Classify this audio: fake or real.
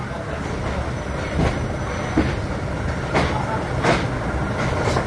real